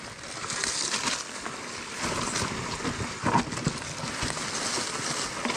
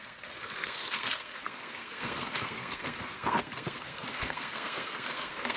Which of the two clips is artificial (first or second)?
second